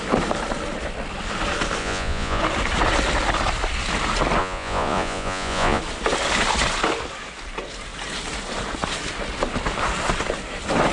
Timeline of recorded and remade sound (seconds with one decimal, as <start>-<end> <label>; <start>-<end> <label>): 0.0-1.8 recorded; 1.8-2.4 remade; 2.4-4.4 recorded; 4.4-5.8 remade; 5.8-10.9 recorded